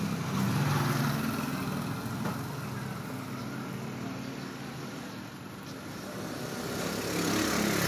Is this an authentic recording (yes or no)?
yes